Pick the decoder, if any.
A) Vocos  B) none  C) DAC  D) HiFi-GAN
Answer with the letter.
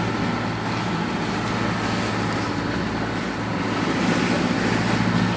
B